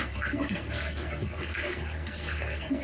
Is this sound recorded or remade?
remade